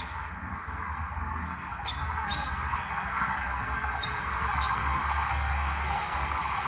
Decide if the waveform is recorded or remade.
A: remade